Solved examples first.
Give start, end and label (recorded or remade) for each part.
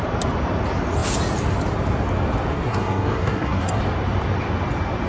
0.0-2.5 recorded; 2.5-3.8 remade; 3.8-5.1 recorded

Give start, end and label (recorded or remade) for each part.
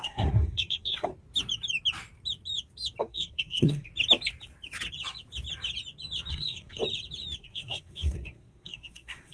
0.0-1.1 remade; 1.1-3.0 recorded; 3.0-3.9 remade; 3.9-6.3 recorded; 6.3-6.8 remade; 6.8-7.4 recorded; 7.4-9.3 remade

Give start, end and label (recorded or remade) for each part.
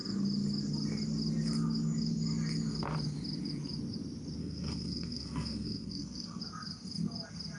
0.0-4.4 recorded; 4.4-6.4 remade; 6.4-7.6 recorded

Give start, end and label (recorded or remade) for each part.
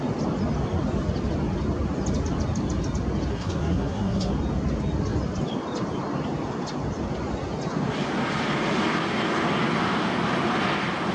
0.0-3.3 recorded; 3.3-4.3 remade; 4.3-11.1 recorded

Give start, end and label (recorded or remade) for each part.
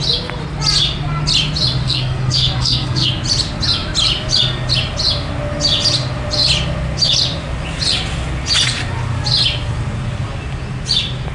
0.0-1.8 recorded; 1.8-3.1 remade; 3.1-11.3 recorded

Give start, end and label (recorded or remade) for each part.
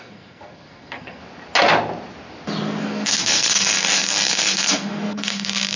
0.0-1.2 remade; 1.2-2.8 recorded; 2.8-5.8 remade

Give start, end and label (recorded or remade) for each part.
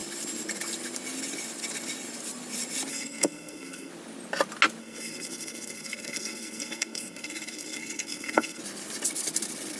0.0-2.9 recorded; 2.9-3.9 remade; 3.9-4.8 recorded; 4.8-8.6 remade; 8.6-9.8 recorded